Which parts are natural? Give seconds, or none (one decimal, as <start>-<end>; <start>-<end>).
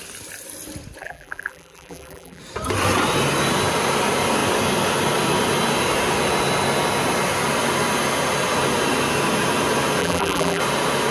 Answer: 0.0-1.0; 2.4-10.0; 10.6-11.1